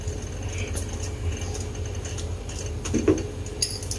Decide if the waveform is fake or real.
real